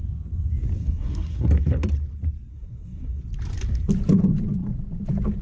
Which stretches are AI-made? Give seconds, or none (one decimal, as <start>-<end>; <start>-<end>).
0.8-1.5; 2.5-3.2